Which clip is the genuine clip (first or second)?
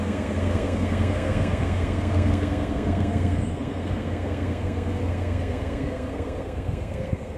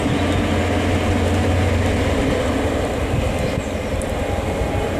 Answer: second